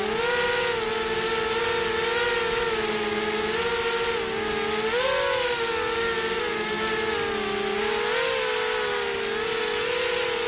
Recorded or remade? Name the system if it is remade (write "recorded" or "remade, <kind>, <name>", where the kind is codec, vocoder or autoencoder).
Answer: recorded